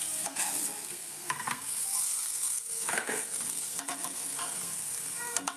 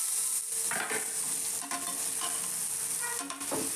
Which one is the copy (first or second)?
first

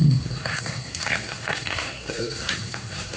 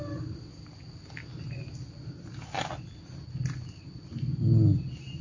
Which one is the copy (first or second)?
first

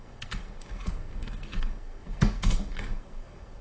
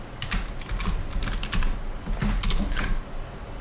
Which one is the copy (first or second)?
first